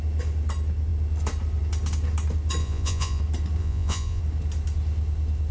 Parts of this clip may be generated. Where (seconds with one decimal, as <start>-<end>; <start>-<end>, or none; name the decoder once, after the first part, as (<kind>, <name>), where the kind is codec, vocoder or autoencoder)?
2.6-3.2 (vocoder, Vocos); 3.6-4.2